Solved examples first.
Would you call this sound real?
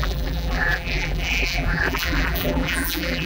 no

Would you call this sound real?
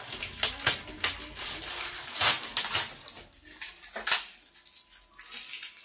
yes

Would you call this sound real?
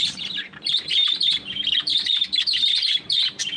no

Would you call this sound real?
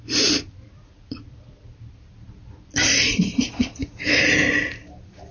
no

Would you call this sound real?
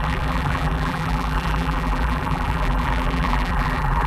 no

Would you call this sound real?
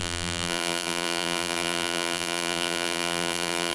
no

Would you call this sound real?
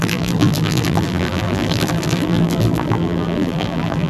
no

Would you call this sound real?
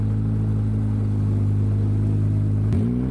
yes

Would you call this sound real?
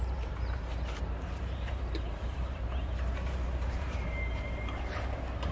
no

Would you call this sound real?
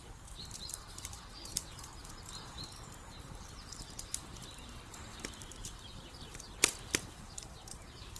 no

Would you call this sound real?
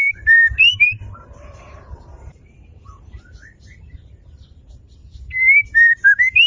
no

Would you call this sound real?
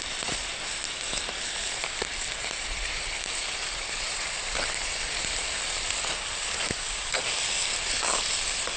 no